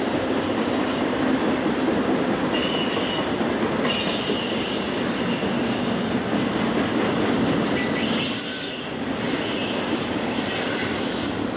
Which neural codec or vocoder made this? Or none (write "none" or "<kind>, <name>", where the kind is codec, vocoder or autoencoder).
none